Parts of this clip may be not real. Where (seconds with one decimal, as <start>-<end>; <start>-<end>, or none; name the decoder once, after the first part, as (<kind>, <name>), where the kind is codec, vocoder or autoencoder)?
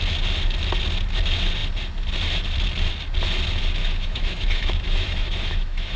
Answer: 3.8-6.0 (autoencoder, DAC-VAE)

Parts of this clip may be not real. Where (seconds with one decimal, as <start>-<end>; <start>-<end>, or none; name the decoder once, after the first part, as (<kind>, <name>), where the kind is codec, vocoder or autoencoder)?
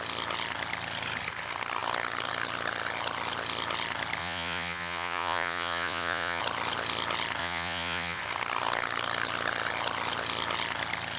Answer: 4.2-6.4 (vocoder, Vocos); 7.4-8.2